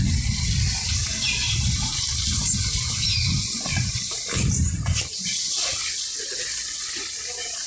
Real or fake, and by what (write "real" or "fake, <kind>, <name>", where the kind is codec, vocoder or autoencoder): real